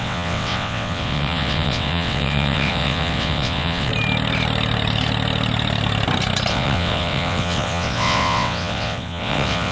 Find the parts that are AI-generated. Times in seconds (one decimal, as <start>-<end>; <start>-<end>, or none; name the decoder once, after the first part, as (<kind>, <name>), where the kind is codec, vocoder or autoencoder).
0.0-3.9 (vocoder, WaveNeXt); 6.5-9.7